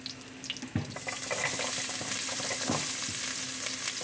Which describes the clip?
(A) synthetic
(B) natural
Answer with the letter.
B